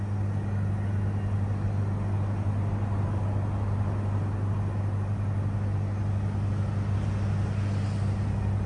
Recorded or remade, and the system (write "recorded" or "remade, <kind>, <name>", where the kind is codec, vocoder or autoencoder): recorded